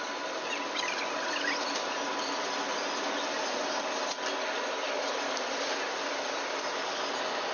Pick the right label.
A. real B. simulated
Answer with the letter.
A